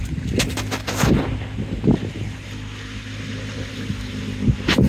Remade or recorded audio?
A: recorded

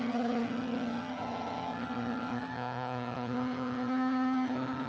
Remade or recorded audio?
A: remade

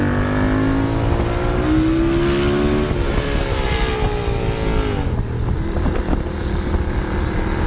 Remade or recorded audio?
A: recorded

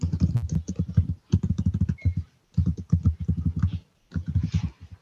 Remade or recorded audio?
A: remade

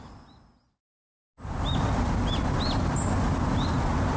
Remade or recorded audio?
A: recorded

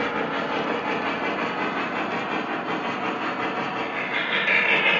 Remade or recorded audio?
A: recorded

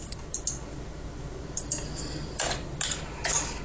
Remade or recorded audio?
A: recorded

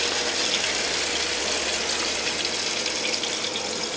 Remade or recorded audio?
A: recorded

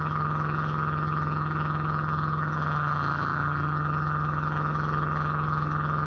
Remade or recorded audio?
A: remade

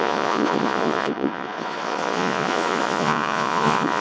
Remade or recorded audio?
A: remade